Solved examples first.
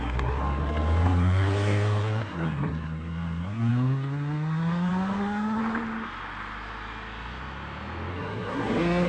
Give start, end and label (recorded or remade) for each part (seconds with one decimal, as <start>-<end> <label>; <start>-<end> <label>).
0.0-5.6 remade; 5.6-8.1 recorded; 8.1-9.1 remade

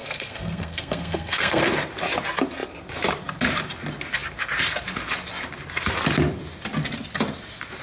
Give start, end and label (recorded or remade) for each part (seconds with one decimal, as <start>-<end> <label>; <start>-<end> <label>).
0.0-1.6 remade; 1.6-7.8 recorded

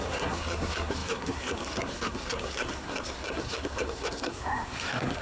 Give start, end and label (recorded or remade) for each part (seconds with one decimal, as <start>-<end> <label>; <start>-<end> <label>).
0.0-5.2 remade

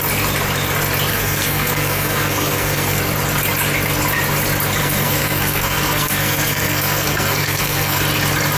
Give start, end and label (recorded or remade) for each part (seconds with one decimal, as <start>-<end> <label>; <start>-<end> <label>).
0.0-1.1 recorded; 1.1-3.0 remade; 3.0-4.8 recorded; 4.8-8.0 remade; 8.0-8.6 recorded

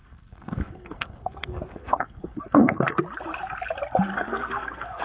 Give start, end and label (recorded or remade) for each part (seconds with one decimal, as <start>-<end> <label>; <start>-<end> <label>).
0.0-3.0 remade; 3.0-4.1 recorded; 4.1-5.0 remade